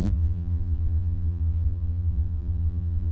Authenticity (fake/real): fake